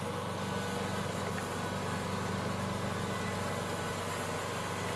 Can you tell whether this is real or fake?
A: real